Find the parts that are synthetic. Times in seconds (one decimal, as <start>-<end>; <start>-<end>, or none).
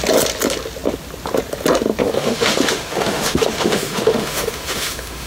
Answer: 2.0-5.3